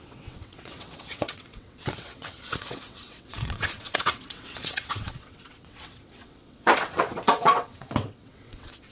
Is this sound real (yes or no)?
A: no